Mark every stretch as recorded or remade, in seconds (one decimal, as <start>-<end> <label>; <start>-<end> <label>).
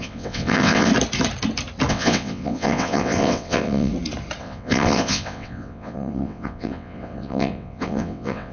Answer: 0.0-0.9 remade; 0.9-1.9 recorded; 1.9-3.9 remade; 3.9-4.4 recorded; 4.4-8.5 remade